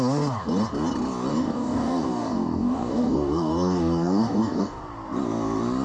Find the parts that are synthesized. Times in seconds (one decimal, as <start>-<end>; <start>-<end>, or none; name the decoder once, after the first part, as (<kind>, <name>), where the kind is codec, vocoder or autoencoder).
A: 1.3-4.8 (codec, DAC)

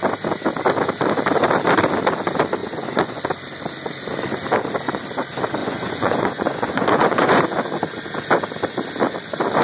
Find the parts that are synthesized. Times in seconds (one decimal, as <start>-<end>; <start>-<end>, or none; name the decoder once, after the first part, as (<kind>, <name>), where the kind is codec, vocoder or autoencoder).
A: 2.6-3.2 (vocoder, Vocos); 5.6-7.4